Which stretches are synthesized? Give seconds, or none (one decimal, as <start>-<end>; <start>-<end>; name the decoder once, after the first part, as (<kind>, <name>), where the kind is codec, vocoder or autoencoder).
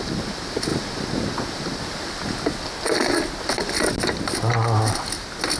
none